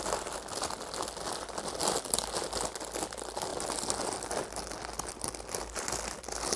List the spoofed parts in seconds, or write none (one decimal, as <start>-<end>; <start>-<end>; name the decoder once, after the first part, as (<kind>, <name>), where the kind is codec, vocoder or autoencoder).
none